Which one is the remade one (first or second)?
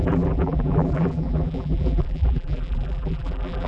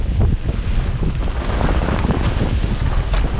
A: first